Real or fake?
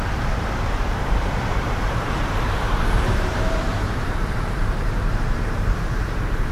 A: fake